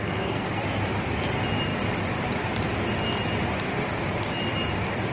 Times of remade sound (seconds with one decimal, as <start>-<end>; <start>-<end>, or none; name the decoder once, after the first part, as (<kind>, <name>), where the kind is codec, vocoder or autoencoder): 0.0-0.6 (codec, SNAC)

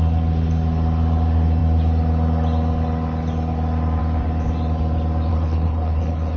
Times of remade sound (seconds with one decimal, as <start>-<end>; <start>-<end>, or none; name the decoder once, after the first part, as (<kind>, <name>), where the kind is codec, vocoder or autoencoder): 5.3-6.4 (codec, HILCodec)

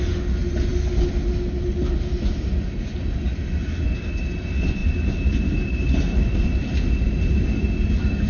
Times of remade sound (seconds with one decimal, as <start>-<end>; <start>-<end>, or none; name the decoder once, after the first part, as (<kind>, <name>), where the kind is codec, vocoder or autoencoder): none

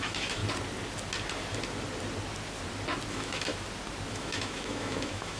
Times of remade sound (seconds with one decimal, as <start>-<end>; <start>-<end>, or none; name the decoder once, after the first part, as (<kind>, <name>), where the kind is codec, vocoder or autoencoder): 0.0-0.4 (autoencoder, DAC-VAE); 3.1-3.5; 4.1-5.4

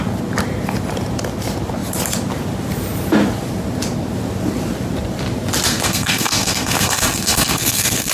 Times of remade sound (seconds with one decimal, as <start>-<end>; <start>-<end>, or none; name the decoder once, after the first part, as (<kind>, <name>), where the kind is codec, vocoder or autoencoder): 5.7-8.1 (codec, SNAC)

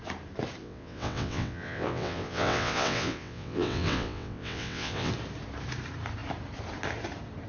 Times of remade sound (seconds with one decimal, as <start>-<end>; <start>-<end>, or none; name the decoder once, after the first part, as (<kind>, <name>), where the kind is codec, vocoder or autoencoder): 0.6-5.1 (vocoder, WaveNeXt)